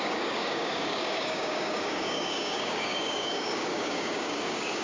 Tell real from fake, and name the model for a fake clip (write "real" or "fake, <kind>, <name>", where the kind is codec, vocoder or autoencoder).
fake, codec, DAC